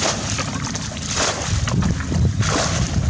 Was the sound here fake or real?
real